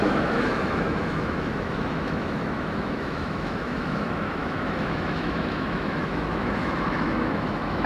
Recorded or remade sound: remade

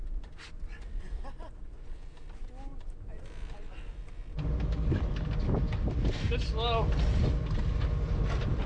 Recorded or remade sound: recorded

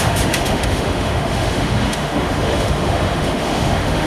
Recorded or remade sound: remade